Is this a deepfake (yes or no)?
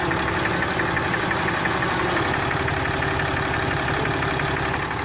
no